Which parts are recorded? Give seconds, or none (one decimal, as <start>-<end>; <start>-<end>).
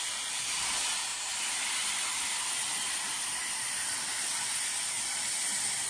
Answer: 0.0-5.9